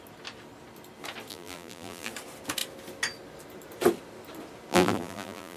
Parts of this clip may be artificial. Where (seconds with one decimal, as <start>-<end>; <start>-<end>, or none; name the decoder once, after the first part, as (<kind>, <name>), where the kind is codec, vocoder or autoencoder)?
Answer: 1.3-2.1 (vocoder, BigVGAN v2); 4.7-5.6